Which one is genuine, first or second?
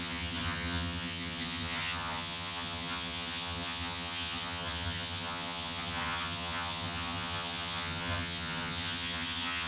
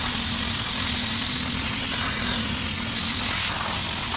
second